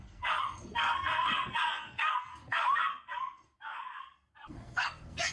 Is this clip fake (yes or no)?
yes